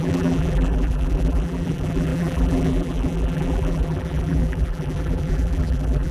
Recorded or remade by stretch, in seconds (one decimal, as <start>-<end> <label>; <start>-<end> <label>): 0.0-6.1 remade